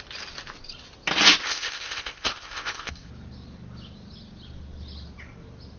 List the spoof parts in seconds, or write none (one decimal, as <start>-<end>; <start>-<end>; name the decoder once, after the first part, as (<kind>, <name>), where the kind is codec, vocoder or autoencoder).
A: 1.4-3.1 (codec, ZipCodec)